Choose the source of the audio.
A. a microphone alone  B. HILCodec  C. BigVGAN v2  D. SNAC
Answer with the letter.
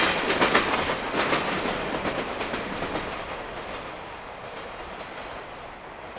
A